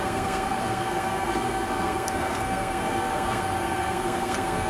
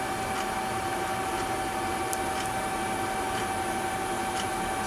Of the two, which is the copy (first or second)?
first